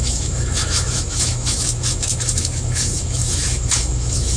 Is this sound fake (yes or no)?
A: yes